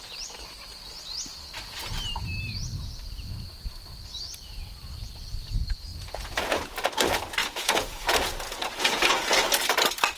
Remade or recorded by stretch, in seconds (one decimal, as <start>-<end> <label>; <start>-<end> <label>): 0.0-5.9 recorded; 5.9-6.7 remade; 6.7-7.4 recorded; 7.4-9.1 remade; 9.1-10.2 recorded